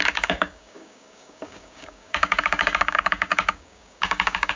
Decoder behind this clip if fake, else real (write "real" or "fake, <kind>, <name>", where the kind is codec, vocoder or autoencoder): fake, codec, DAC